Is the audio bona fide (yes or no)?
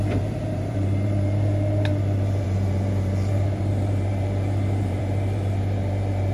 no